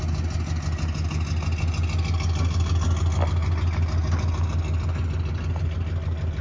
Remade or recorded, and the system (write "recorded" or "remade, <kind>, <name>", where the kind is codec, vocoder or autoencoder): recorded